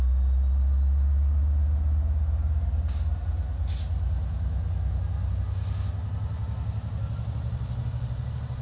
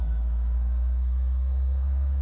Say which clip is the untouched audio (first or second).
first